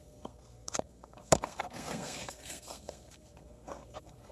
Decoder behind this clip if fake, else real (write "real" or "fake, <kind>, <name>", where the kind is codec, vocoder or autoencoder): fake, codec, SNAC